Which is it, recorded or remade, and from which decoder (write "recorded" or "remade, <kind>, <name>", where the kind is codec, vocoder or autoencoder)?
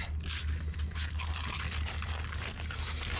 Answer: recorded